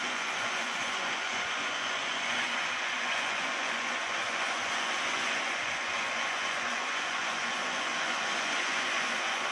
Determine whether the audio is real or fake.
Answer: fake